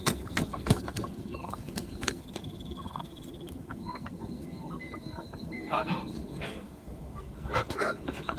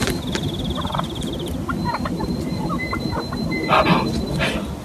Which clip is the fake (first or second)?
first